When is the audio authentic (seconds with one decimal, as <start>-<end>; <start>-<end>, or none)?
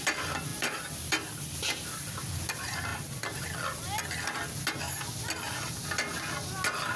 0.0-7.0